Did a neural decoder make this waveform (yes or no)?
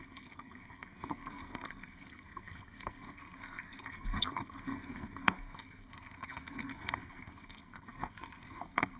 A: yes